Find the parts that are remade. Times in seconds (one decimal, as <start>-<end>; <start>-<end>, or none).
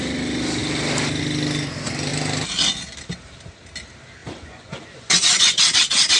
4.2-5.6